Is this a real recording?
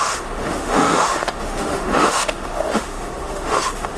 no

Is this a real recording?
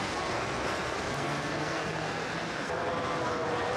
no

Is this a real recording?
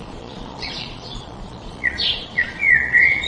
no